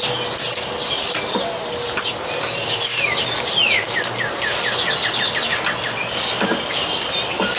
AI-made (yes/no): no